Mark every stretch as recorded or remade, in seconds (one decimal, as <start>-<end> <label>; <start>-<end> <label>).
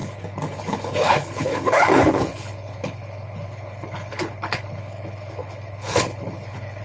0.0-6.8 remade